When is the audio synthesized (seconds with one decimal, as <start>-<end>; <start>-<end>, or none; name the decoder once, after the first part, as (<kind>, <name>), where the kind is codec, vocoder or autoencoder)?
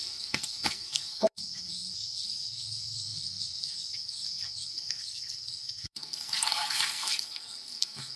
0.0-8.2 (codec, SNAC)